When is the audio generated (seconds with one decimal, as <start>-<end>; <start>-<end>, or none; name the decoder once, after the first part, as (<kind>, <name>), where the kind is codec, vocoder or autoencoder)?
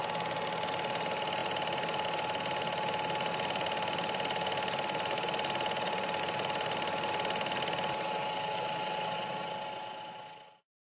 none